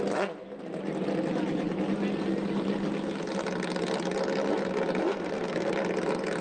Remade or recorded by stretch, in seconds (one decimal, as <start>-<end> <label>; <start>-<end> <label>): 0.0-5.0 recorded; 5.0-5.7 remade; 5.7-6.4 recorded